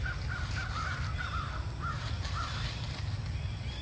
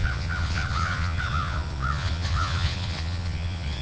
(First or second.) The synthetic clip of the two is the second